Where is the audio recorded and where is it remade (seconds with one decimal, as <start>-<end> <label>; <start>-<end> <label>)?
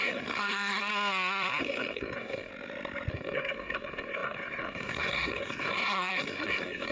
0.0-0.9 remade; 0.9-1.6 recorded; 1.6-2.5 remade; 2.5-3.1 recorded; 3.1-6.9 remade